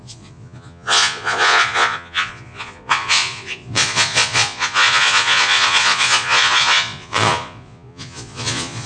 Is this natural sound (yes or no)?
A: no